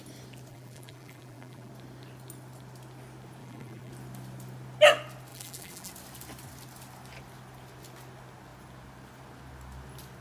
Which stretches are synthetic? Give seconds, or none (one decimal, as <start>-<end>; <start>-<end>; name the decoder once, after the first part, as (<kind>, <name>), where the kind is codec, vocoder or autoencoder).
0.5-1.7 (vocoder, BigVGAN v2); 3.4-3.9; 5.3-5.9